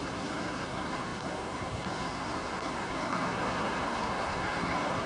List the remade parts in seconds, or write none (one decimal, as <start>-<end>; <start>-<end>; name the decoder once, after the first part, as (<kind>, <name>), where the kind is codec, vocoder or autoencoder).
0.0-5.1 (codec, SNAC)

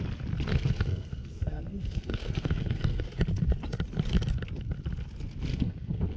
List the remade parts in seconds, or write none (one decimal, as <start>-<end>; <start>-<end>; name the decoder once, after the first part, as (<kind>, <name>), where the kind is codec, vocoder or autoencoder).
0.5-3.0 (codec, SNAC); 5.5-6.2

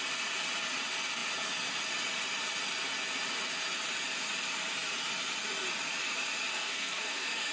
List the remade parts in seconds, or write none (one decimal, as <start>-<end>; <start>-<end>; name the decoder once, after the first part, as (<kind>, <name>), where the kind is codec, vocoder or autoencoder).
6.5-7.5 (codec, SNAC)

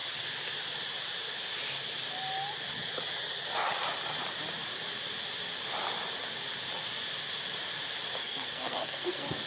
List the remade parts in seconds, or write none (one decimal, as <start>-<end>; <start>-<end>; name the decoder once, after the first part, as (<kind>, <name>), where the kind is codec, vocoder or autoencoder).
8.2-9.5 (codec, SNAC)

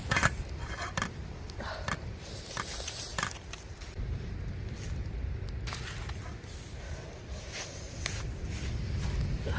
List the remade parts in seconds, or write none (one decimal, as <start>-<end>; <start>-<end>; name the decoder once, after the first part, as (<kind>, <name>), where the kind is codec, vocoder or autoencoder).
none

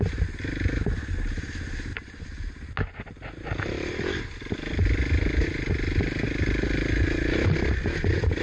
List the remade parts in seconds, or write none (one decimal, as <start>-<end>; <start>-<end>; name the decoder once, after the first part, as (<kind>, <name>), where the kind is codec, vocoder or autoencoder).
none